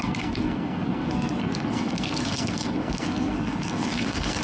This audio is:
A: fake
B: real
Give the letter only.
A